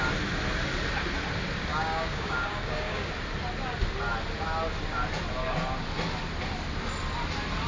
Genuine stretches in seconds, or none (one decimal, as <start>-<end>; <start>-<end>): 0.0-1.7; 3.1-7.7